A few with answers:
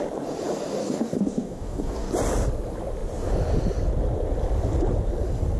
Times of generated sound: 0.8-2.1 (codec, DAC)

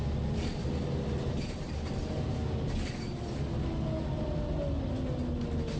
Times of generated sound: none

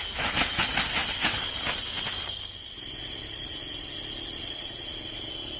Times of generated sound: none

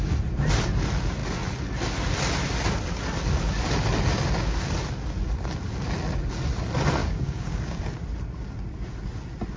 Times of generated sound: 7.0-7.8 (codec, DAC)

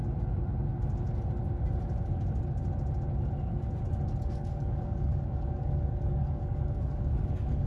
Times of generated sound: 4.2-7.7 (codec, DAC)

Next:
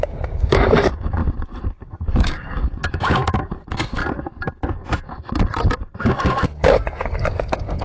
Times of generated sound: 0.0-1.2 (codec, DAC); 2.2-4.0; 6.0-7.8